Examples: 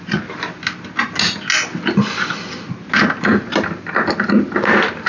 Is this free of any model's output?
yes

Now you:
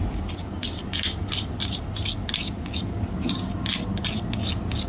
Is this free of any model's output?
yes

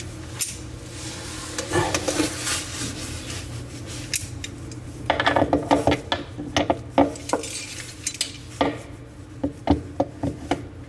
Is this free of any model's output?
yes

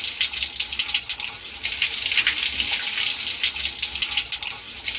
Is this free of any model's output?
yes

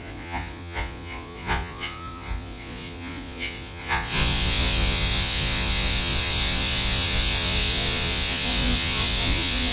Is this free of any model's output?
no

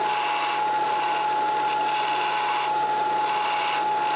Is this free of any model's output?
yes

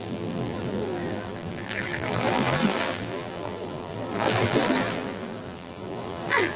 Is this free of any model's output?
no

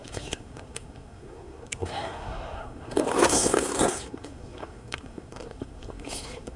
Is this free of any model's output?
no